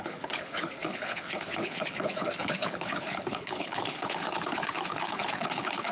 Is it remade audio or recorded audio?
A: remade